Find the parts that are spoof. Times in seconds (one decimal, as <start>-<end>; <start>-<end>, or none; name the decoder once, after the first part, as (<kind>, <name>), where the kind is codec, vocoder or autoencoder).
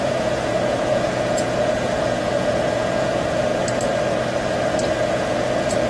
0.0-3.5 (vocoder, Vocos); 5.0-5.9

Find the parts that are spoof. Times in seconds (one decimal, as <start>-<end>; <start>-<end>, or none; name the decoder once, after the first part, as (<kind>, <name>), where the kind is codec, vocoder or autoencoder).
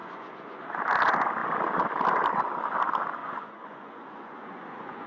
0.0-0.6 (vocoder, Vocos); 3.2-5.1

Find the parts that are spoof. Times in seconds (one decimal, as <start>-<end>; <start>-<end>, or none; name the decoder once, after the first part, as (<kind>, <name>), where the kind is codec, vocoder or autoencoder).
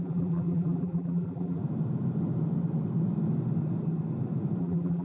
0.0-1.6 (vocoder, BigVGAN v2); 4.6-5.0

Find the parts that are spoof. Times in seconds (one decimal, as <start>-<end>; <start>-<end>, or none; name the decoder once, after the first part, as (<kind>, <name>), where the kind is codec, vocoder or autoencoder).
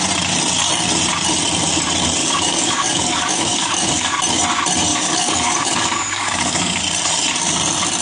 2.2-4.2 (codec, DAC); 4.9-6.8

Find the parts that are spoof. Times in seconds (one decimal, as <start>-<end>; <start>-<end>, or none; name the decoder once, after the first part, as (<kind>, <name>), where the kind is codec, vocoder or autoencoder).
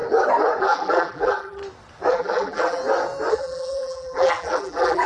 0.6-1.6 (vocoder, BigVGAN v2); 2.1-2.8; 3.3-5.1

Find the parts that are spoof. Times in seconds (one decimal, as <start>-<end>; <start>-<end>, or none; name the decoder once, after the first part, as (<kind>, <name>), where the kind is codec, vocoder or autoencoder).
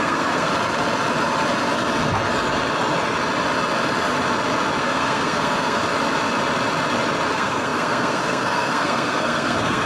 0.0-0.5 (codec, SNAC); 4.8-5.8; 7.3-9.9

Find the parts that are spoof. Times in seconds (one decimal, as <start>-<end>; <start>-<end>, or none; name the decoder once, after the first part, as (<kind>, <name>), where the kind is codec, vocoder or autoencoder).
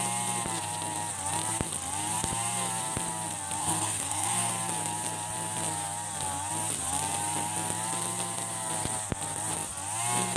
3.6-4.5 (codec, SNAC)